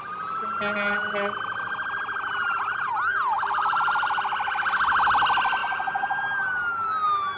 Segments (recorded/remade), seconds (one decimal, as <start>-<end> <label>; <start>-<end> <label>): 0.0-2.9 recorded; 2.9-4.2 remade; 4.2-5.6 recorded; 5.6-6.2 remade; 6.2-7.4 recorded